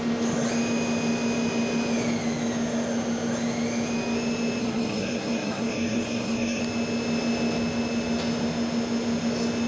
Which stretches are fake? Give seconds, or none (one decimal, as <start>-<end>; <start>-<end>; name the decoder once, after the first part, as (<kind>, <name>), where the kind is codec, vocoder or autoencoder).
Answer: 4.6-6.6 (codec, SNAC)